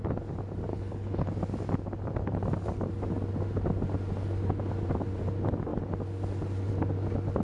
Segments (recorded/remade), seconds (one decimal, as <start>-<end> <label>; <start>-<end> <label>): 0.0-0.7 recorded; 0.7-1.3 remade; 1.3-7.4 recorded